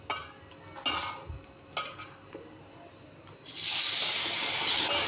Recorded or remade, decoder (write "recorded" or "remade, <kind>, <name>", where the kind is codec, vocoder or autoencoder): recorded